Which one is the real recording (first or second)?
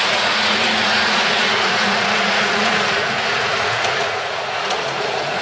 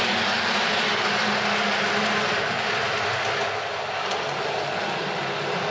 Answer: second